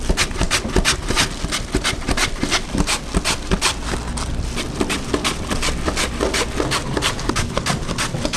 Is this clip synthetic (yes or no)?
no